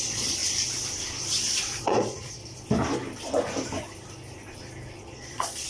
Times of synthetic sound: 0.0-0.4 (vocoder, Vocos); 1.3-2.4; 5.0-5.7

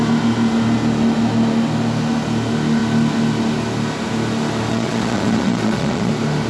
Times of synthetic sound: 4.7-6.1 (vocoder, Vocos)

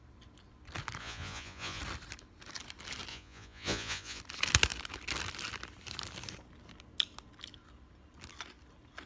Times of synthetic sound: 1.0-1.8 (vocoder, Vocos); 3.1-4.2

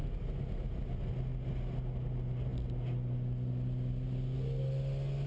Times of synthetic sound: none